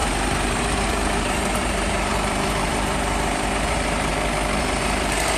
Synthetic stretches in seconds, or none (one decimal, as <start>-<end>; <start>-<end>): 0.0-4.1; 4.6-5.4